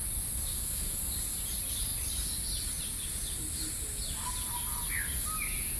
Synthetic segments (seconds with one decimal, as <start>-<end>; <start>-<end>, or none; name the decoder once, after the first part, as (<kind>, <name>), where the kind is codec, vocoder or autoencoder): 0.5-1.0 (autoencoder, DAC-VAE)

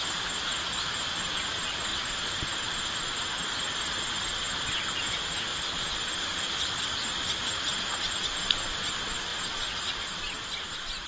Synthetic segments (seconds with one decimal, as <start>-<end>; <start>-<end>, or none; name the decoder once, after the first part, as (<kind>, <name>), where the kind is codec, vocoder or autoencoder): 5.5-6.7 (vocoder, BigVGAN v2); 9.3-10.2